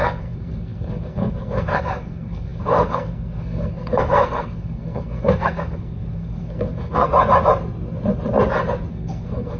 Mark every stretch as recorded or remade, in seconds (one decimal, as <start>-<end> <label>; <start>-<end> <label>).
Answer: 0.0-7.1 remade; 7.1-8.9 recorded; 8.9-9.6 remade